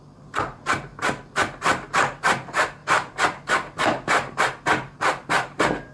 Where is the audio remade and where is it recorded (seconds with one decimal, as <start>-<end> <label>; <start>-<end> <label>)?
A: 0.0-5.9 recorded